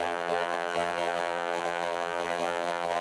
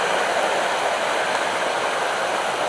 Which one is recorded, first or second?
second